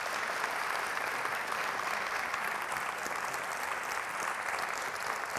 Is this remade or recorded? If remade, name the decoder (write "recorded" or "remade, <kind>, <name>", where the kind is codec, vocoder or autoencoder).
remade, vocoder, BigVGAN v2